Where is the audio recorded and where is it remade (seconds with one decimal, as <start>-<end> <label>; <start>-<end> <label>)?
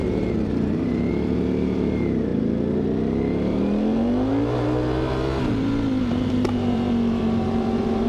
0.0-2.3 remade; 2.3-6.3 recorded; 6.3-8.1 remade